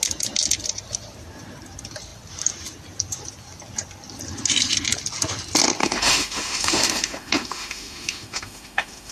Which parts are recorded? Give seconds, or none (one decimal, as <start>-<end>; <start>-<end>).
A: 0.0-5.8

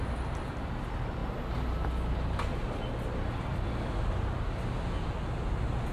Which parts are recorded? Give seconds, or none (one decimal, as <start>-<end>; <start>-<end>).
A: 0.0-5.9

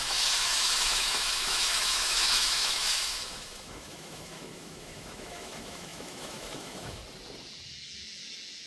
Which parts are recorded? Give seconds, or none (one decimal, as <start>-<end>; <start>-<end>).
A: 7.0-8.7

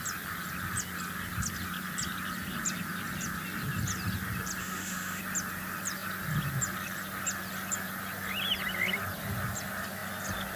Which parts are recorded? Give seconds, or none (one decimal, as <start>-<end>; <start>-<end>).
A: 0.0-4.6; 5.2-10.6